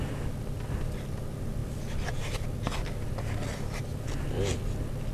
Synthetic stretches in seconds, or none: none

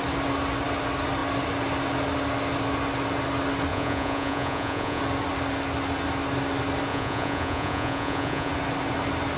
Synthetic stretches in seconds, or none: 3.7-5.0 (vocoder, Vocos); 6.9-8.5

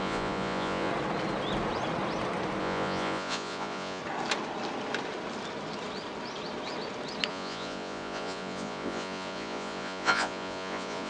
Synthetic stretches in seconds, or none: 0.0-0.9 (vocoder, Vocos); 2.6-4.0; 7.3-11.1

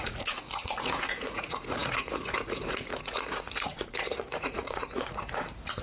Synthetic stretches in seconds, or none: 0.0-5.8 (vocoder, Vocos)

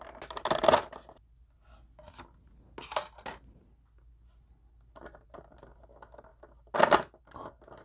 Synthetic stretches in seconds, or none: none

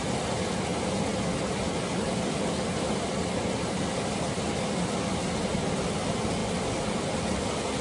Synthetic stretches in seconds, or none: none

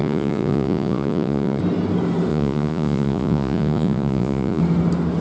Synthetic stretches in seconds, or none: 0.0-1.6 (vocoder, Vocos); 2.3-4.6

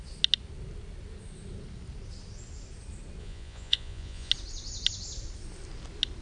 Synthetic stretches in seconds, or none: 3.2-4.3 (vocoder, Vocos)